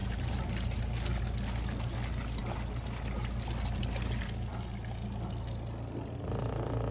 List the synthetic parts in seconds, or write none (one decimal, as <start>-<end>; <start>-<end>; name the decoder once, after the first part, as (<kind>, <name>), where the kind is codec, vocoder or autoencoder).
0.0-0.8 (vocoder, BigVGAN v2)